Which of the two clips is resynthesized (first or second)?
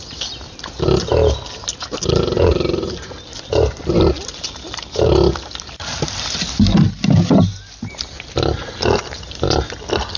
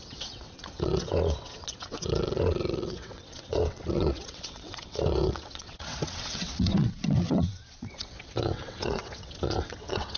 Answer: second